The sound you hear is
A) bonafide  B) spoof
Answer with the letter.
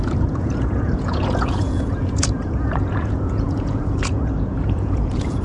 B